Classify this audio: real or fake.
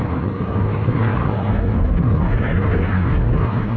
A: fake